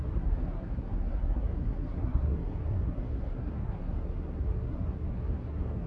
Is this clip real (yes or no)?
no